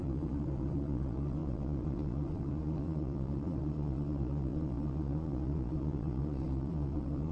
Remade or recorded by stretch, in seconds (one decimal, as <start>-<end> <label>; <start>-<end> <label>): 0.0-7.3 remade